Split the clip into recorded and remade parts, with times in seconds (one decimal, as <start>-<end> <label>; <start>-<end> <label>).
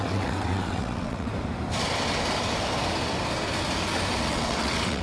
0.0-1.3 remade; 1.3-4.2 recorded; 4.2-5.0 remade